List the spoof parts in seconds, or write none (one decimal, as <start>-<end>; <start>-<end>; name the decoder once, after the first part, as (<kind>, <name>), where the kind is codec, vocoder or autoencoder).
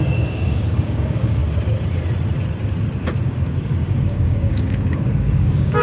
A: 0.0-1.4 (codec, DAC); 3.2-5.8